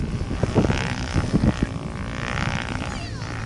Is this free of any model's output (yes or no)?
yes